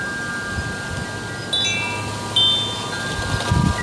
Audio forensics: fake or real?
real